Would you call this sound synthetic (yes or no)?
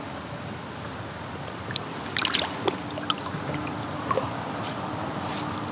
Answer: no